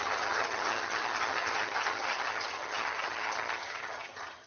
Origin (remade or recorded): remade